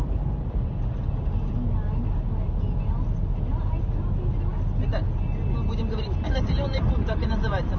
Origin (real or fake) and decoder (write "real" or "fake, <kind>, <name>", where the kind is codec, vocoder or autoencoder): real